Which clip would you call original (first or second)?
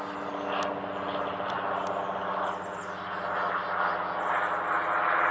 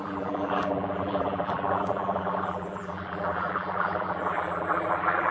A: first